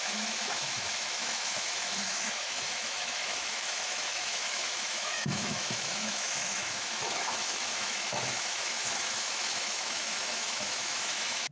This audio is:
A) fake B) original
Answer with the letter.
A